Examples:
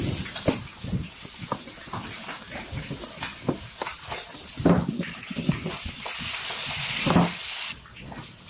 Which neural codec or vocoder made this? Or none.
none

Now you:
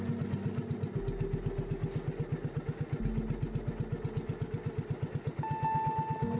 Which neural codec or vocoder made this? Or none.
none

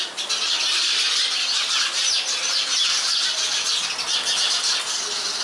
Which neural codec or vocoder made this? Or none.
none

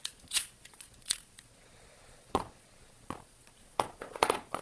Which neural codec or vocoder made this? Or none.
vocoder, Vocos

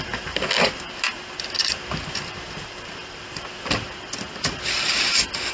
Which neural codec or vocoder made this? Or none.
none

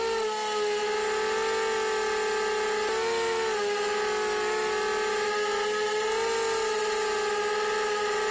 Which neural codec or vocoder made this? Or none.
none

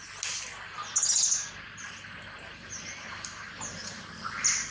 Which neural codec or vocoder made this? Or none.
none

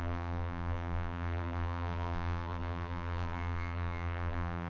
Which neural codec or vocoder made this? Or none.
vocoder, BigVGAN v2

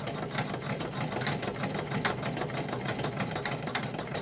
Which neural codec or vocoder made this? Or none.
none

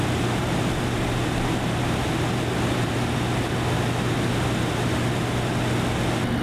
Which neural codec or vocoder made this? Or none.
none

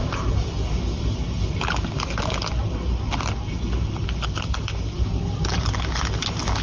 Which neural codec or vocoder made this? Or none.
none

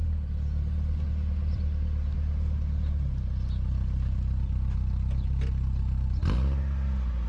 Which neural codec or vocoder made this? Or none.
none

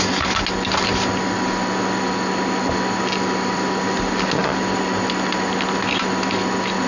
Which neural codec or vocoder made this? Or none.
none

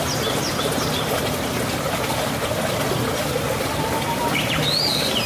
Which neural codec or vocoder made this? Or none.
none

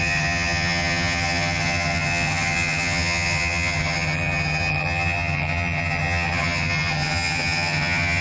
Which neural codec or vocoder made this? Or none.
vocoder, HiFi-GAN